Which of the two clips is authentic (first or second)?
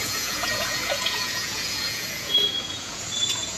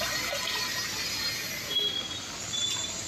second